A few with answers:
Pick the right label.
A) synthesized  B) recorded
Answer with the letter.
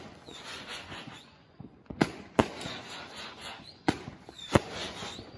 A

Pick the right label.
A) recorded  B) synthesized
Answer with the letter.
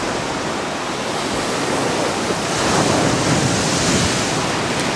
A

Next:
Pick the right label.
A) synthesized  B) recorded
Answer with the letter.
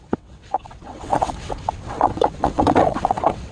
A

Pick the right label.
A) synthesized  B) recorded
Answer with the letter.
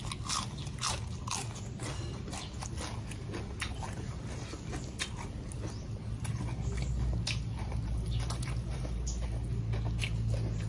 B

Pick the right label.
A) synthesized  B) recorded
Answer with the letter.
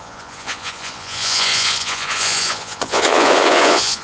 A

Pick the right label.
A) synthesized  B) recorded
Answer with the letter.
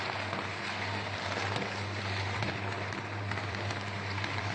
A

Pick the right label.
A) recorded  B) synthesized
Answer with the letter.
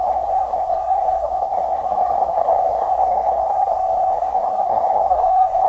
B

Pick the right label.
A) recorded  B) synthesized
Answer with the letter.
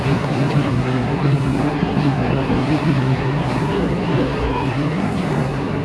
B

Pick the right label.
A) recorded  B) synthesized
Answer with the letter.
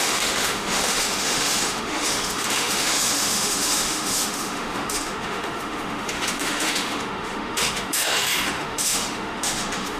B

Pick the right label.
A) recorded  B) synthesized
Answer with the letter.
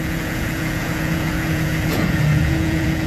B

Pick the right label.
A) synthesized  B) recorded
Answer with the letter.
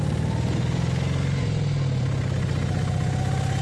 B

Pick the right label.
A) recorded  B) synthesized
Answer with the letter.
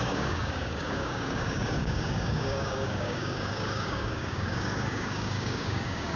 B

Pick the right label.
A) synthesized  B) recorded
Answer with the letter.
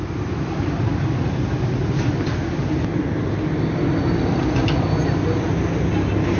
B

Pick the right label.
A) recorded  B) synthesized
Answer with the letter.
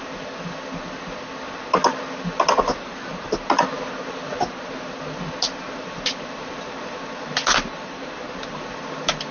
A